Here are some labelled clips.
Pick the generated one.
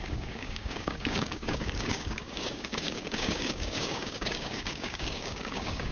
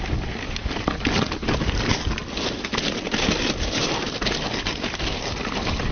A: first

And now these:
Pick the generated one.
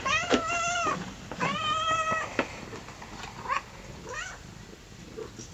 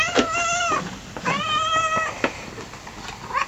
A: first